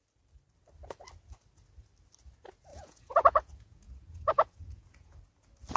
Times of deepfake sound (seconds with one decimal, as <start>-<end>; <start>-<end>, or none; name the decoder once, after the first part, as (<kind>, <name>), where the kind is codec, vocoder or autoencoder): 2.7-5.2 (vocoder, Vocos)